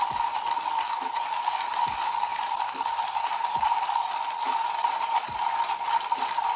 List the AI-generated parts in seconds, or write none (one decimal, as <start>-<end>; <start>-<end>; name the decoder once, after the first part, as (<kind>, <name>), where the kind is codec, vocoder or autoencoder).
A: 0.0-6.6 (vocoder, BigVGAN v2)